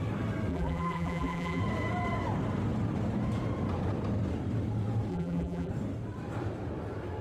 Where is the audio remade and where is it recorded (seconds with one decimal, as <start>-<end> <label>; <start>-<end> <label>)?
0.0-0.5 recorded; 0.5-1.6 remade; 1.6-5.1 recorded; 5.1-5.7 remade; 5.7-7.2 recorded